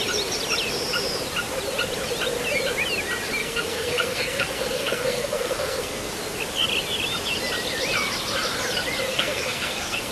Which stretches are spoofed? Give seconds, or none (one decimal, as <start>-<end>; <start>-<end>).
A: 3.4-6.1; 9.1-10.1